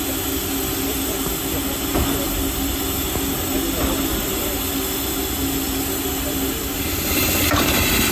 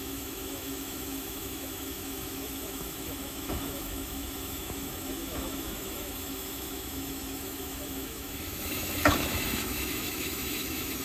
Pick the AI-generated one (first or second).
second